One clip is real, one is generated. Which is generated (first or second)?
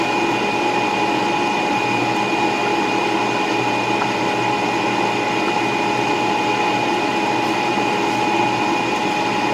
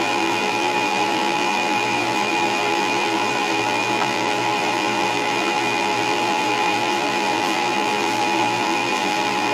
second